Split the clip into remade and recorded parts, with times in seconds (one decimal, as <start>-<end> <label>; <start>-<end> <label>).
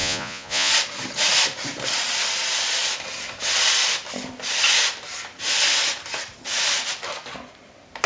0.0-0.7 remade; 0.7-8.1 recorded